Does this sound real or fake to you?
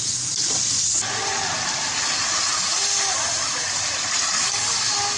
real